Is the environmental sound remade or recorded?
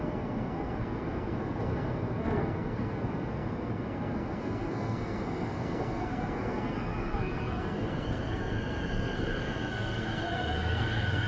remade